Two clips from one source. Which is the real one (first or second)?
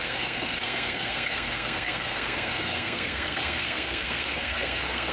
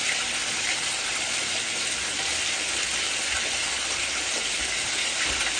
second